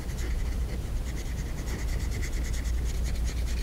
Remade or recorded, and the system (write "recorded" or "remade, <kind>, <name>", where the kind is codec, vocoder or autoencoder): recorded